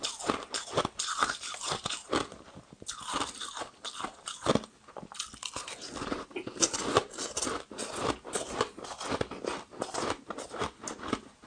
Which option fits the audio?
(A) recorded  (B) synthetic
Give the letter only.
A